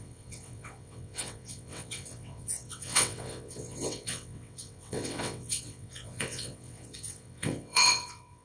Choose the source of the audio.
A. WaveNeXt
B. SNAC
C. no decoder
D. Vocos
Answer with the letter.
A